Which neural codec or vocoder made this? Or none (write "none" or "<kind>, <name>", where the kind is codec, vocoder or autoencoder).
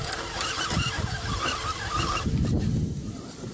none